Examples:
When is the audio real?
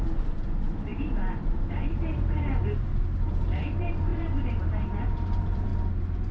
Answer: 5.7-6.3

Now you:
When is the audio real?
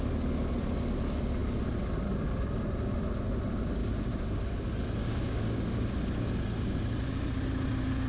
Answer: 0.0-3.8; 4.4-5.0; 5.9-8.1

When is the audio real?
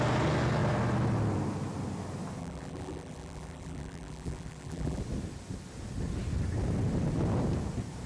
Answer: 0.0-2.4; 5.0-8.1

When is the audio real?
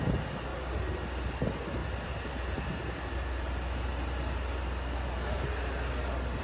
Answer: 0.0-6.4